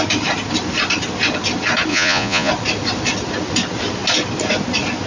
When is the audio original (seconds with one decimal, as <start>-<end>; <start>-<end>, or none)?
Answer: 0.0-1.9; 2.5-5.1